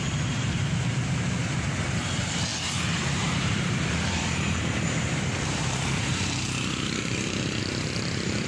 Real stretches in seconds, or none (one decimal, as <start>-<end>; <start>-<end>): none